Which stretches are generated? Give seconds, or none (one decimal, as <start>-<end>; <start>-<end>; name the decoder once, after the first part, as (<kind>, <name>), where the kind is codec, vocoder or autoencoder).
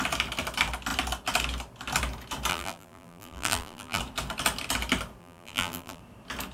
2.5-4.0 (vocoder, BigVGAN v2); 5.2-6.0